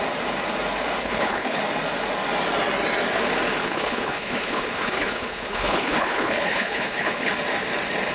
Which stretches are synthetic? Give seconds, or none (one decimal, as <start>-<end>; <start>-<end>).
1.0-1.6; 3.6-7.3